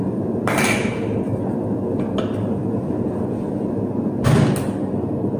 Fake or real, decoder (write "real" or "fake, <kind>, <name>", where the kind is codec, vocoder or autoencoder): real